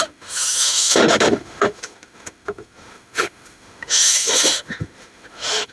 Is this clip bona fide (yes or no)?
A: no